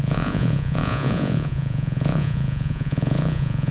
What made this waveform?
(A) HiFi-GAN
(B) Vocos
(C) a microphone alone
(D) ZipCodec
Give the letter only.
B